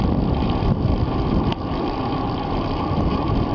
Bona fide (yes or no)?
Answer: no